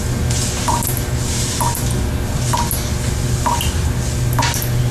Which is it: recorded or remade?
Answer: recorded